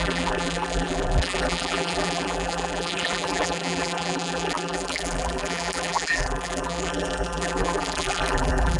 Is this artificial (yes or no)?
yes